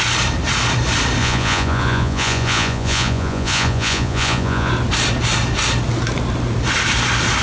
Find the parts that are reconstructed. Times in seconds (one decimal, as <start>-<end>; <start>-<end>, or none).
1.2-4.7